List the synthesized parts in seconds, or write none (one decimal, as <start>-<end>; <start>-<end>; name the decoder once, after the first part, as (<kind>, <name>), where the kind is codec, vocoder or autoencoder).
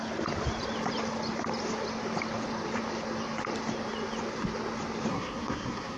5.1-6.0 (codec, SNAC)